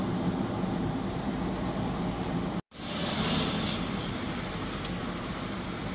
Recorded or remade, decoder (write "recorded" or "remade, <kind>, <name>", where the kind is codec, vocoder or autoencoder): recorded